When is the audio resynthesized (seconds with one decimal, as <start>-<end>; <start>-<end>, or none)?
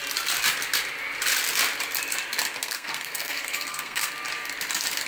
2.6-4.1